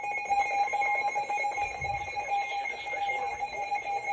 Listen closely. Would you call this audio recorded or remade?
recorded